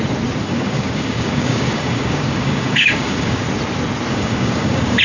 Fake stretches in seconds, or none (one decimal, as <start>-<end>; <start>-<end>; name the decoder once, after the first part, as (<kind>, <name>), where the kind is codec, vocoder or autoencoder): 0.4-3.4 (codec, DAC); 4.1-5.0